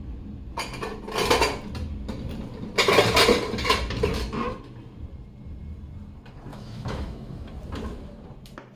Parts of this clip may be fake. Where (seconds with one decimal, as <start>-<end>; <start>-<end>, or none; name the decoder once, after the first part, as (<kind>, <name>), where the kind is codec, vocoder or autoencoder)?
6.5-7.5 (autoencoder, DAC-VAE)